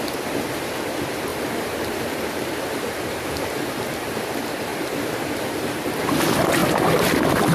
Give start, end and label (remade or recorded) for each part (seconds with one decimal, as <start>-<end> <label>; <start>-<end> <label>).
0.0-1.3 recorded; 1.3-4.2 remade; 4.2-4.7 recorded; 4.7-5.9 remade; 5.9-7.5 recorded